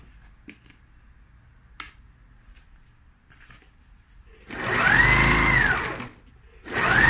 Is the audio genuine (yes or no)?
yes